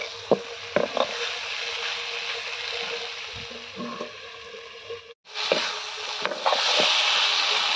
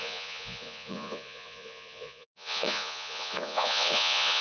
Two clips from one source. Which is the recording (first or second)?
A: first